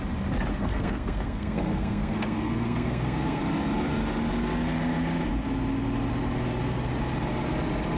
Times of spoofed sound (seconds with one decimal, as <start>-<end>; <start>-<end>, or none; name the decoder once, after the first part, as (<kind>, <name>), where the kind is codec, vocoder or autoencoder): 0.5-3.4 (codec, SNAC)